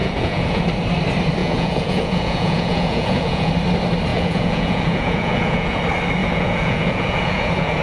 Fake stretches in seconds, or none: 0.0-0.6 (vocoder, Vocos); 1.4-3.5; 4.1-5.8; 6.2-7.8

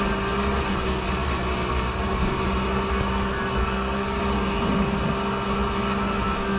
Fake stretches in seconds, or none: 3.6-4.2 (codec, SNAC)

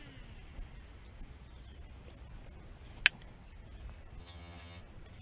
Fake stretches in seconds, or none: 4.2-4.8 (vocoder, HiFi-GAN)

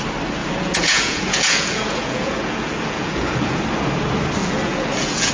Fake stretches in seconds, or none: 0.4-3.6 (vocoder, Vocos); 4.4-5.3